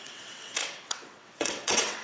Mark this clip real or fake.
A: fake